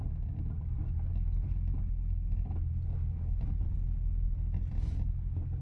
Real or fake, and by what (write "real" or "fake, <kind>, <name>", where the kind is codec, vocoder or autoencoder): real